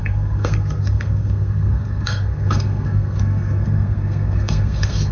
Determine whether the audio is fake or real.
fake